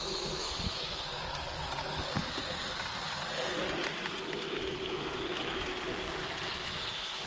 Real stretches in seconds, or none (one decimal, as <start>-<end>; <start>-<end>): 0.9-4.7; 5.7-6.6